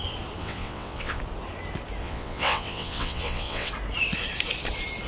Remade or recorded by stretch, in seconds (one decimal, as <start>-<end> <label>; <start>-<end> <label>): 0.0-0.4 recorded; 0.4-1.2 remade; 1.2-2.0 recorded; 2.0-3.7 remade; 3.7-5.1 recorded